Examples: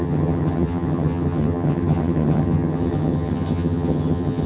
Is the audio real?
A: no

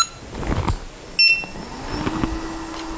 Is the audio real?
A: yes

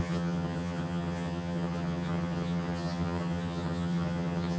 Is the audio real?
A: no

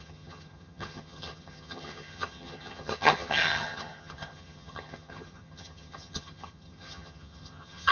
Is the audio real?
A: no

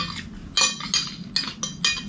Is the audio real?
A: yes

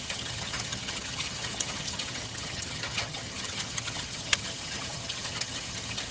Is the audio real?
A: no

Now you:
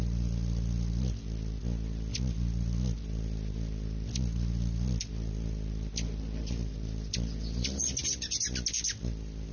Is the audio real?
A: yes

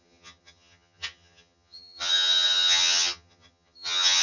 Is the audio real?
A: no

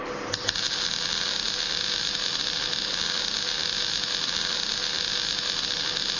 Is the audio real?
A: yes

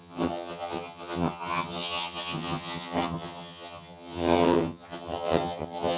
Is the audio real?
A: no